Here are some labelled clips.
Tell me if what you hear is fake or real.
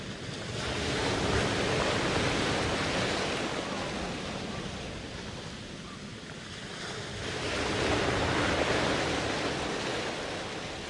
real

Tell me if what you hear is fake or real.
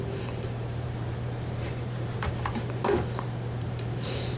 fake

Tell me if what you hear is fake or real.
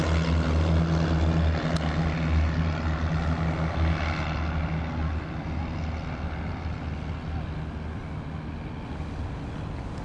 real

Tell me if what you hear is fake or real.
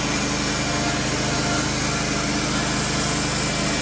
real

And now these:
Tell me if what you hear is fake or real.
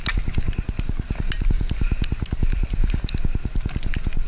real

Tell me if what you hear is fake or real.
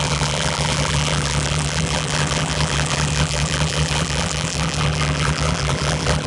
fake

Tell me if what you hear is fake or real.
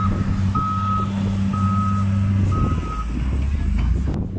real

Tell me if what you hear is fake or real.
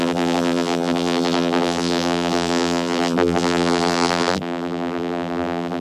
fake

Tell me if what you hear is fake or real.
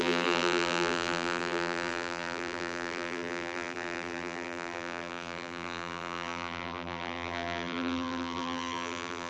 fake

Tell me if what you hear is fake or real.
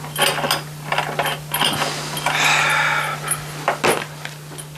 real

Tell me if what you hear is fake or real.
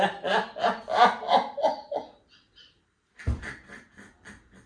fake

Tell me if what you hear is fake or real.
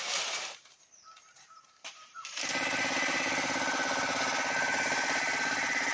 fake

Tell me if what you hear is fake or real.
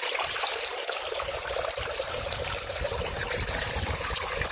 fake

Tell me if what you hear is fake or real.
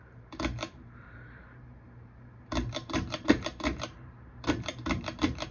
fake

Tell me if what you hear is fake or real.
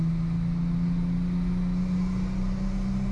real